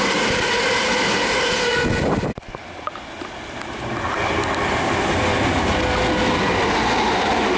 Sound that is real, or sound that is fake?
real